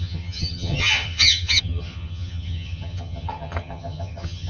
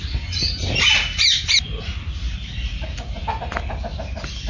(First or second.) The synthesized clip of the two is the first